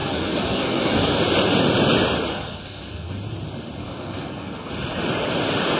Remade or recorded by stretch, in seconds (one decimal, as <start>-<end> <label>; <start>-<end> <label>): 0.0-1.1 remade; 1.1-2.3 recorded; 2.3-3.1 remade; 3.1-3.8 recorded; 3.8-4.7 remade; 4.7-5.8 recorded